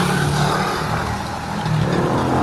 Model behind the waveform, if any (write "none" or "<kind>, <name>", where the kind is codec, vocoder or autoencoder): none